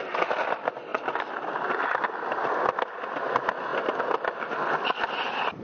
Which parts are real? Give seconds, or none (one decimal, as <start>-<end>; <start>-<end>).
0.0-5.6